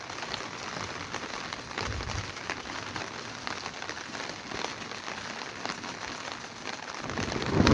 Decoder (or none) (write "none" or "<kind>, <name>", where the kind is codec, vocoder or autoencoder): none